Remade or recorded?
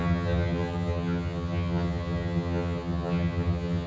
remade